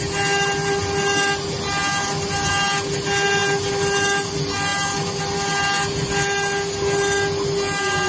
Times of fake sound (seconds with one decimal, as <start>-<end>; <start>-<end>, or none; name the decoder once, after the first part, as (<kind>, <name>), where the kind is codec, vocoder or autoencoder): none